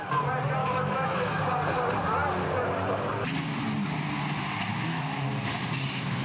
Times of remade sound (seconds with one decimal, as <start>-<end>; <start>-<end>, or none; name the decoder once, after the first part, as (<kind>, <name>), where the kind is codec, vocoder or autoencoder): 0.6-1.4 (autoencoder, DAC-VAE); 4.7-5.3